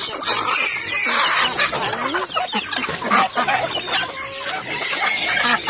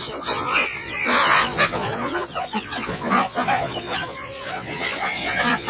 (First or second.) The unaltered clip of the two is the first